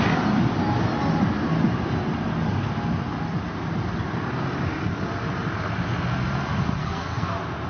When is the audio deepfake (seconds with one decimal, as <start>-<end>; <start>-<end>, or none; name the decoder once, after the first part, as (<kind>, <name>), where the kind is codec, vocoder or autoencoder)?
6.8-7.3 (codec, SNAC)